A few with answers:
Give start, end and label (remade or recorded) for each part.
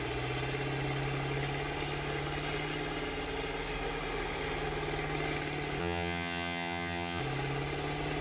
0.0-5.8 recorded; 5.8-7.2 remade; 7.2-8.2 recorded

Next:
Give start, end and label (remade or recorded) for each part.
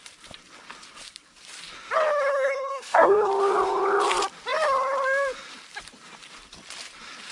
0.0-2.3 recorded; 2.3-3.3 remade; 3.3-7.3 recorded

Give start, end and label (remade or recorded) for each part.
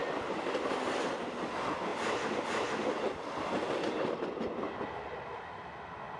0.0-6.2 recorded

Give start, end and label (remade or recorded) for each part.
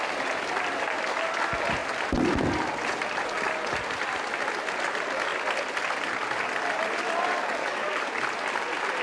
0.0-7.6 recorded; 7.6-8.1 remade; 8.1-9.0 recorded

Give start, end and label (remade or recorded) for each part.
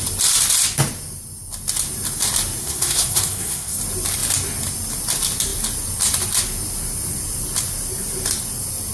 0.0-2.6 recorded; 2.6-3.8 remade; 3.8-8.9 recorded